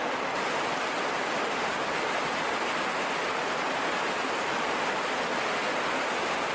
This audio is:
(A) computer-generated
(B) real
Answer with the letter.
B